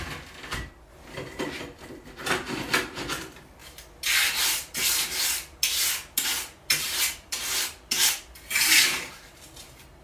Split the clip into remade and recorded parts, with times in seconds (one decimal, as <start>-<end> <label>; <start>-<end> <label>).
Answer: 0.0-10.0 recorded